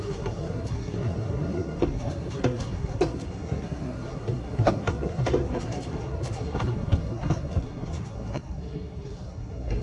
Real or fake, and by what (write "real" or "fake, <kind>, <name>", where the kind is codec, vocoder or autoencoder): fake, codec, SNAC